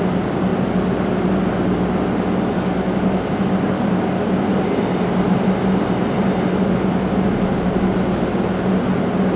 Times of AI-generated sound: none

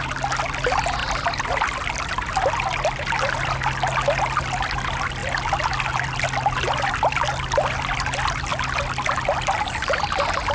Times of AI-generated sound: none